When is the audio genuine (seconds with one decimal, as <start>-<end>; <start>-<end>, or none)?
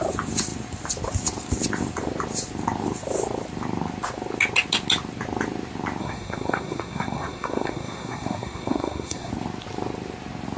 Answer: 0.0-6.0; 9.3-10.6